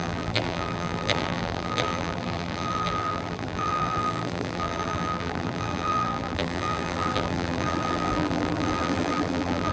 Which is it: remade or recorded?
remade